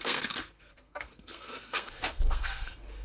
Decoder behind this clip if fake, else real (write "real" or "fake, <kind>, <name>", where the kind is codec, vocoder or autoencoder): fake, codec, SNAC